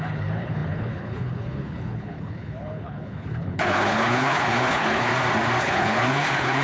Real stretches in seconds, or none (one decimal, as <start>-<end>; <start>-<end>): 5.1-5.6